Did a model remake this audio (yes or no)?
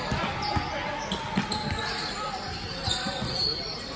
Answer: no